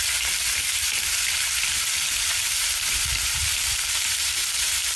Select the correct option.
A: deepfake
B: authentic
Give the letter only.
A